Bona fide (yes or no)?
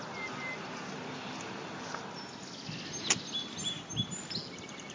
yes